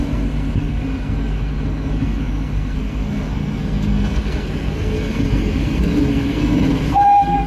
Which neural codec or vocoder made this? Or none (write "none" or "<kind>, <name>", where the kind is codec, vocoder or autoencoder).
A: codec, SNAC